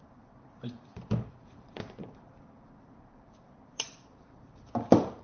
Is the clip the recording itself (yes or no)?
no